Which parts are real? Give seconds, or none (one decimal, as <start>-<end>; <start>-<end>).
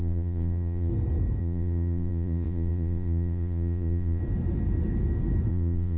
0.9-1.4; 4.2-5.5